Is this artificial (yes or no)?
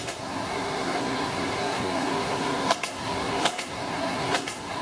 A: yes